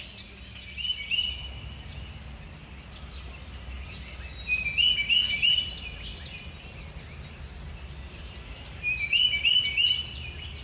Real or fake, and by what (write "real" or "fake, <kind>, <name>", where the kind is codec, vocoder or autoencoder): real